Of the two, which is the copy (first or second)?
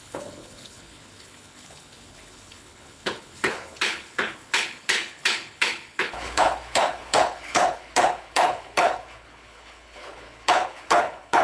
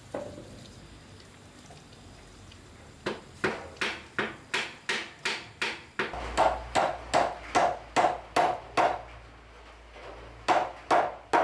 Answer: first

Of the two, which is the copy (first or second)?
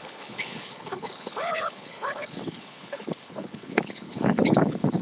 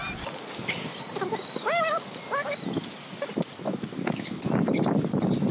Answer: first